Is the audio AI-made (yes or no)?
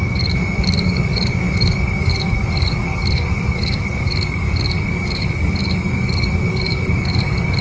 yes